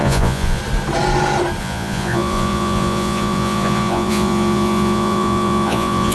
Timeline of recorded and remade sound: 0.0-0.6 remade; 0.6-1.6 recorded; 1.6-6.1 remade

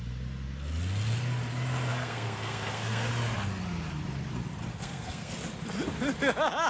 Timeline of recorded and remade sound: 0.0-1.9 recorded; 1.9-3.1 remade; 3.1-4.7 recorded; 4.7-5.3 remade; 5.3-6.7 recorded

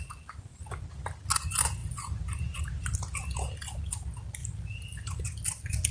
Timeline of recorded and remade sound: 0.0-5.9 recorded

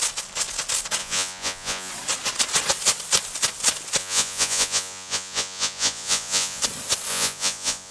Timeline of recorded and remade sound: 0.0-1.0 recorded; 1.0-1.9 remade; 1.9-4.0 recorded; 4.0-6.6 remade; 6.6-7.1 recorded; 7.1-7.9 remade

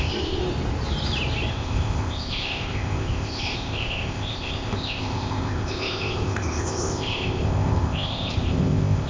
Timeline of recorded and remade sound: 0.0-0.4 remade; 0.4-1.5 recorded; 1.5-9.1 remade

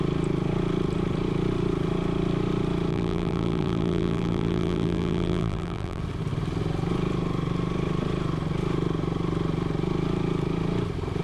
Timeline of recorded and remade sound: 0.0-2.9 recorded; 2.9-6.0 remade; 6.0-11.2 recorded

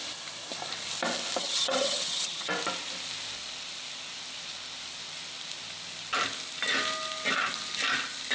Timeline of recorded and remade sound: 0.0-1.4 recorded; 1.4-2.5 remade; 2.5-8.3 recorded

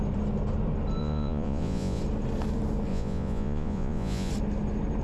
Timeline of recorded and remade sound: 0.0-1.0 recorded; 1.0-2.0 remade; 2.0-2.9 recorded; 2.9-4.3 remade; 4.3-5.0 recorded